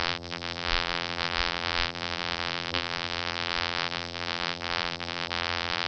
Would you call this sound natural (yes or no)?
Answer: no